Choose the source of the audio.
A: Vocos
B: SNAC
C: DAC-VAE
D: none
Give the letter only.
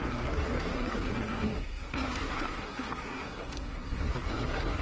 B